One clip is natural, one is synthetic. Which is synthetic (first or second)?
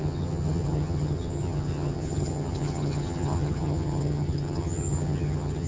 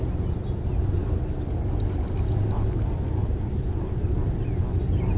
first